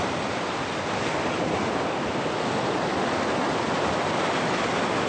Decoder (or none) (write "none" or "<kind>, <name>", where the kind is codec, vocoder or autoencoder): none